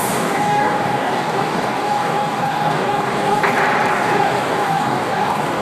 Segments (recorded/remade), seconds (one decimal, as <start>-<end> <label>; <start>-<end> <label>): 0.0-3.4 remade; 3.4-3.9 recorded; 3.9-5.6 remade